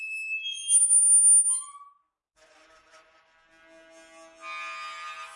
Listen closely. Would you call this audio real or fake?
real